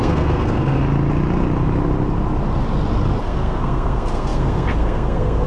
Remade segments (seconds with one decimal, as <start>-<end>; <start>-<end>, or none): 0.0-0.8; 3.2-5.5